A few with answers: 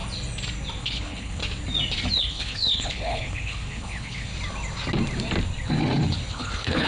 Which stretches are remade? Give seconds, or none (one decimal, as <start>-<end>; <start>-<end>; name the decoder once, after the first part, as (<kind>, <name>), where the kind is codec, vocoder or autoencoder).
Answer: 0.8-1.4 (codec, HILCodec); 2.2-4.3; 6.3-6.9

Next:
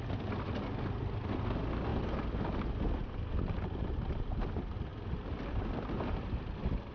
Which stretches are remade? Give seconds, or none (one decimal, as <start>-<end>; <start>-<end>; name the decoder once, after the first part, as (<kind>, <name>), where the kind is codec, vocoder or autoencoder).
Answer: none

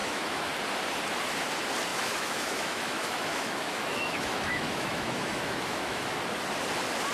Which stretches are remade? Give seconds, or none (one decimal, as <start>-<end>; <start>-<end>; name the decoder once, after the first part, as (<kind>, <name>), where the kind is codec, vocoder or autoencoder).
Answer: 0.0-0.5 (autoencoder, DAC-VAE); 1.9-6.2

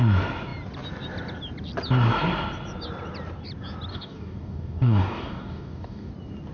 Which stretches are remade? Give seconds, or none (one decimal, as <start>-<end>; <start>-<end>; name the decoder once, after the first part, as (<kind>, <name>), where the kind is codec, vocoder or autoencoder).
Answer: 3.9-6.1 (codec, DAC)